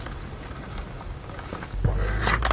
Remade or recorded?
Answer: recorded